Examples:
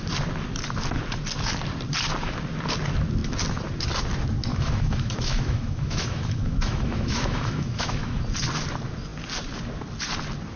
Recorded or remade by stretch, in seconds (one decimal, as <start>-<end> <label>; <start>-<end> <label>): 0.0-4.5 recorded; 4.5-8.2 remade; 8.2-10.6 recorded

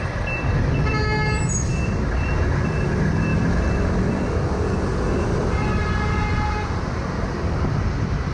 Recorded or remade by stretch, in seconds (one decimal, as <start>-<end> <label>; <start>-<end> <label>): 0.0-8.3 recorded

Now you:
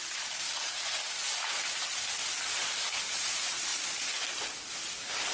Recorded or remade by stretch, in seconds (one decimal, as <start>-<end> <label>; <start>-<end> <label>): 0.0-5.3 recorded